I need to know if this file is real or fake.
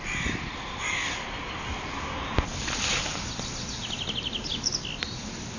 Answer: real